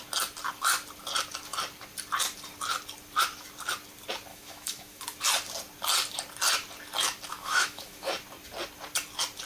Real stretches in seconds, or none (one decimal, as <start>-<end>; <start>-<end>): 0.0-4.3; 5.0-7.3; 8.1-9.5